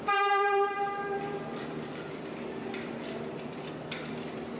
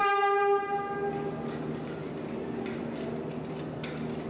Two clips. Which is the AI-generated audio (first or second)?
first